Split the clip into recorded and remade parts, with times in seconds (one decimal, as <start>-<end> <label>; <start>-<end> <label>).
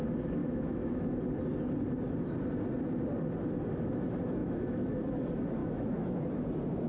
0.0-0.4 recorded; 0.4-1.2 remade; 1.2-4.4 recorded; 4.4-4.9 remade; 4.9-5.6 recorded; 5.6-6.2 remade; 6.2-6.9 recorded